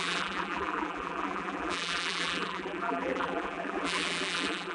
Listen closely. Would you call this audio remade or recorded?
remade